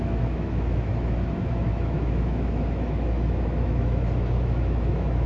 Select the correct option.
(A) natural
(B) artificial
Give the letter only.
B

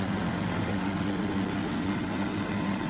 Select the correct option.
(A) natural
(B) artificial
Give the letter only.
B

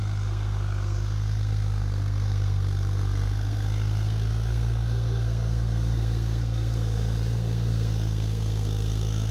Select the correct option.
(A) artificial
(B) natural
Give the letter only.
A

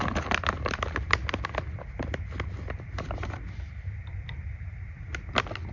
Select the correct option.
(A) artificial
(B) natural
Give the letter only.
B